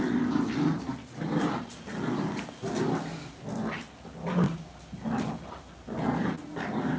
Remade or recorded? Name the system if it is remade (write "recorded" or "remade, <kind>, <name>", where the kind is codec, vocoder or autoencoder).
recorded